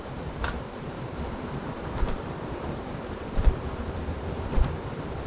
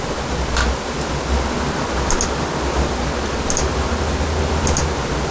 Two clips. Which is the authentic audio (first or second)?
second